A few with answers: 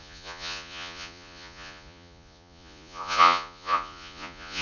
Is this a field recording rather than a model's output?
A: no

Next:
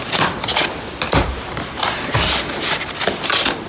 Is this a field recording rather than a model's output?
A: yes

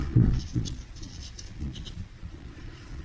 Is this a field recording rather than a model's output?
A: no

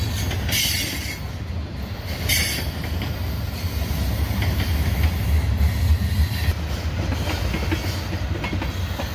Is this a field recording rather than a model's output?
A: yes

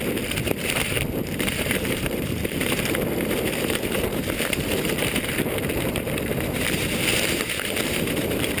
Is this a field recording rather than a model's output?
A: no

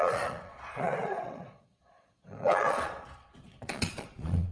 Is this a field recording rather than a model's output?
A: no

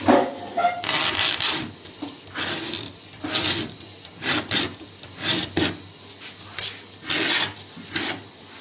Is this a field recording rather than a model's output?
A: yes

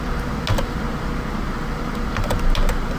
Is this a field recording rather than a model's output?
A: yes